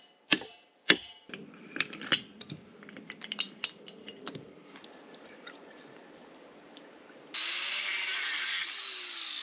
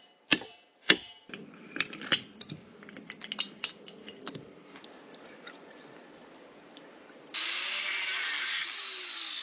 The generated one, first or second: first